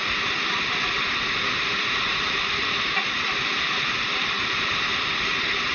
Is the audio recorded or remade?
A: recorded